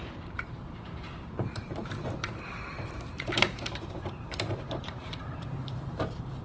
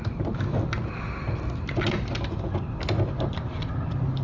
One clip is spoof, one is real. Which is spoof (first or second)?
first